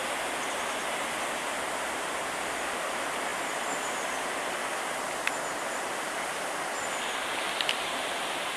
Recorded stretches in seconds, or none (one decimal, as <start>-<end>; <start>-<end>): 0.0-8.6